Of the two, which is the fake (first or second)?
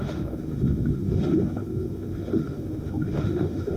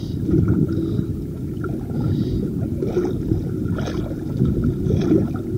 first